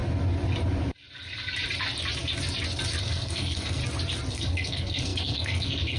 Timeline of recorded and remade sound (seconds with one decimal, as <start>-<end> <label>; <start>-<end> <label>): 0.0-3.0 recorded; 3.0-3.8 remade; 3.8-4.3 recorded; 4.3-6.0 remade